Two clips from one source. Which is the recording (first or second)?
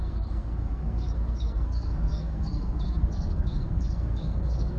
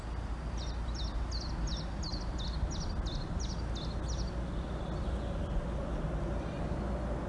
second